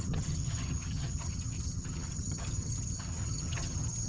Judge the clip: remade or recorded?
remade